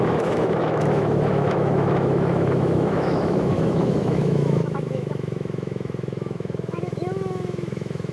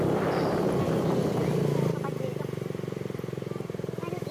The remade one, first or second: first